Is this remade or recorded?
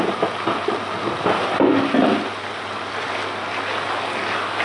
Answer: recorded